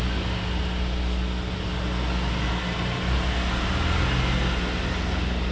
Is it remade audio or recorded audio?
recorded